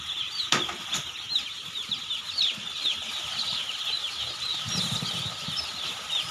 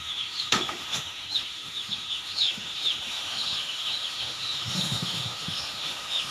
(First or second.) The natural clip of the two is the first